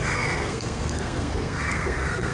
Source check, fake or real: fake